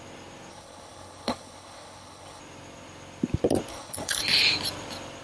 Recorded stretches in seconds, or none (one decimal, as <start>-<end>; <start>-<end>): 0.0-0.5; 2.4-3.7; 4.2-5.2